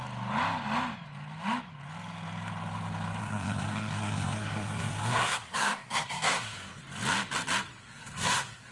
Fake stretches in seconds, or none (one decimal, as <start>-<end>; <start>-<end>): 3.2-6.8; 7.8-8.7